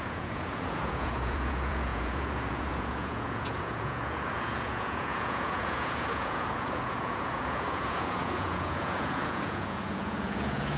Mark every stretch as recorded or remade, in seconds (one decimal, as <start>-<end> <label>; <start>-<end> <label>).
0.0-10.8 remade